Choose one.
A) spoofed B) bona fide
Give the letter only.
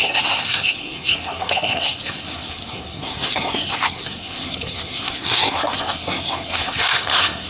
A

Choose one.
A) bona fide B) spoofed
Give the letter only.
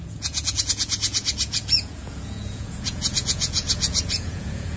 B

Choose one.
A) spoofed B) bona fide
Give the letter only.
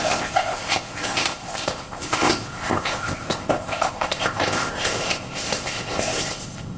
A